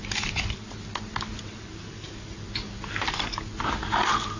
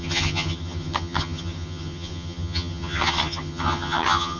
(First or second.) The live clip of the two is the first